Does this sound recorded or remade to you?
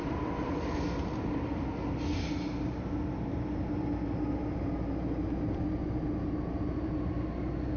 recorded